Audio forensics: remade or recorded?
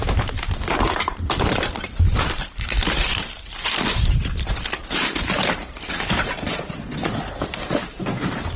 remade